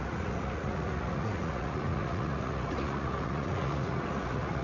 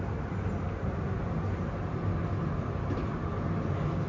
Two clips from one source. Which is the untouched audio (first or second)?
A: second